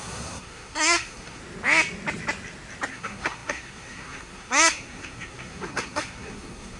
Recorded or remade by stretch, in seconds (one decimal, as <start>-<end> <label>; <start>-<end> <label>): 0.0-1.4 remade; 1.4-2.9 recorded; 2.9-6.8 remade